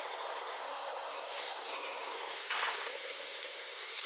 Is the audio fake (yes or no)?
yes